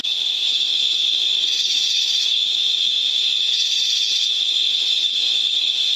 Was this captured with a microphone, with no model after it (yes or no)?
no